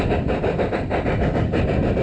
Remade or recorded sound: recorded